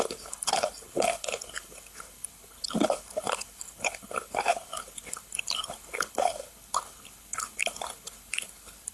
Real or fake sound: fake